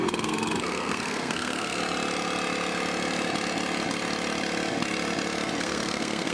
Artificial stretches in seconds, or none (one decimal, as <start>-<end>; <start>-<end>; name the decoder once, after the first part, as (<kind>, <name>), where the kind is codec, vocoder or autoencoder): 0.0-1.8 (codec, SNAC); 5.6-6.3